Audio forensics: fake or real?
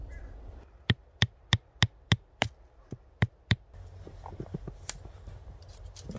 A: real